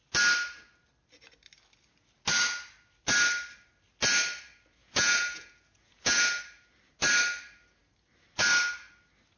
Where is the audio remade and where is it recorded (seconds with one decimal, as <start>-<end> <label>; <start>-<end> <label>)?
0.0-4.8 recorded; 4.8-6.4 remade; 6.4-9.4 recorded